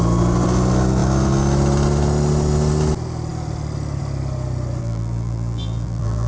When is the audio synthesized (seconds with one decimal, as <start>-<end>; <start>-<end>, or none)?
4.8-6.3